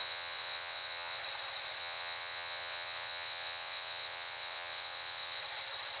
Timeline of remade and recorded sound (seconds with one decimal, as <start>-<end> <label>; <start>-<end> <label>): 0.0-1.2 remade; 1.2-1.8 recorded; 1.8-5.4 remade; 5.4-6.0 recorded